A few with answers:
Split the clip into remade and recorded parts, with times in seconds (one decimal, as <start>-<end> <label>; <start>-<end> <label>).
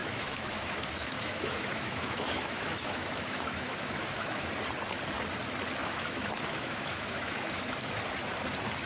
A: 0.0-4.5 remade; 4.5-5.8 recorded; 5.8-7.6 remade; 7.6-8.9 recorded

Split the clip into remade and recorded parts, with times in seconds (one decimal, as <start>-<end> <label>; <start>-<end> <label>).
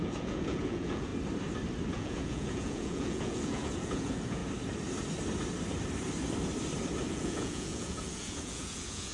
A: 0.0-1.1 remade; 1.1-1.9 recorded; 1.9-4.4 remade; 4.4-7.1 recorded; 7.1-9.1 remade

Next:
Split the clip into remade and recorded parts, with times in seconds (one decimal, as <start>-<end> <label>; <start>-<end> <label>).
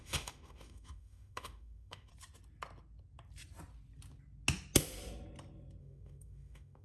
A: 0.0-2.1 remade; 2.1-5.8 recorded; 5.8-6.8 remade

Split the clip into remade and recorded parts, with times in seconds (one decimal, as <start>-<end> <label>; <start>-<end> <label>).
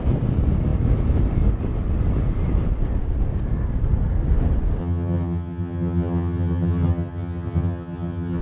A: 0.0-4.8 recorded; 4.8-8.4 remade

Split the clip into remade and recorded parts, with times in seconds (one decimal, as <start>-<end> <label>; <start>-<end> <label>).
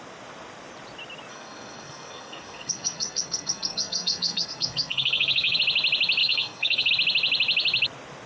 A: 0.0-1.3 recorded; 1.3-5.6 remade; 5.6-6.2 recorded; 6.2-6.9 remade; 6.9-8.3 recorded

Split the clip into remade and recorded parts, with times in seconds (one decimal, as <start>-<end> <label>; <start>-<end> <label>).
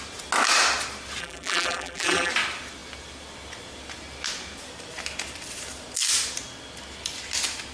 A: 0.0-1.2 recorded; 1.2-2.3 remade; 2.3-7.7 recorded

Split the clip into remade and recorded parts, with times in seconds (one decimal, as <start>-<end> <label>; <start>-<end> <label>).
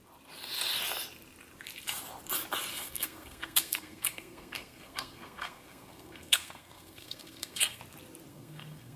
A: 0.0-2.7 recorded; 2.7-7.8 remade; 7.8-8.3 recorded; 8.3-9.0 remade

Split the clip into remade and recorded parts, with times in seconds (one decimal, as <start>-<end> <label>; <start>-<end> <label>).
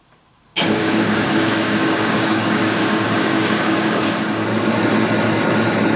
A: 0.0-0.5 recorded; 0.5-4.1 remade; 4.1-6.0 recorded